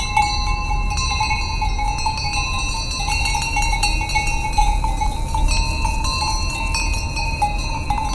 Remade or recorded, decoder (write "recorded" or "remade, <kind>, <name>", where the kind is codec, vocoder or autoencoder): recorded